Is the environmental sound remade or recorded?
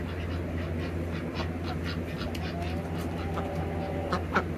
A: recorded